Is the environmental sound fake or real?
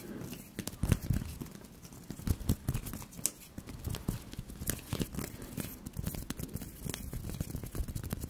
real